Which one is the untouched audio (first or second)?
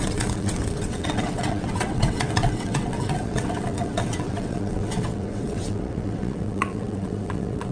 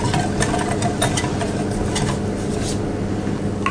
second